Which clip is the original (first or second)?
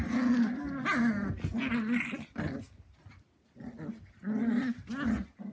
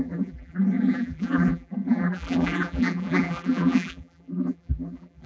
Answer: first